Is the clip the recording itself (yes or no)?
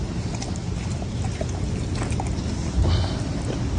yes